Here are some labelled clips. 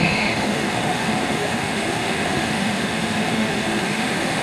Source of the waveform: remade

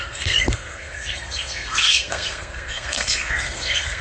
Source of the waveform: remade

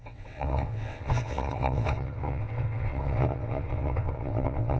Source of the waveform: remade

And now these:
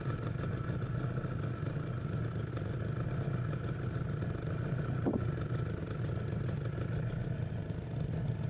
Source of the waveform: recorded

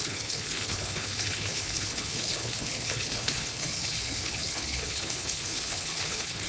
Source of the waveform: remade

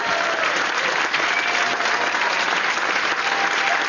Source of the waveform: recorded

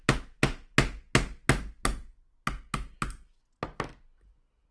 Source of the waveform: recorded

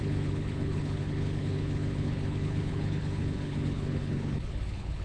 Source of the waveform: remade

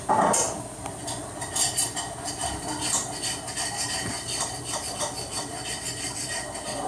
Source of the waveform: recorded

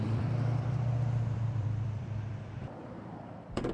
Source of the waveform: remade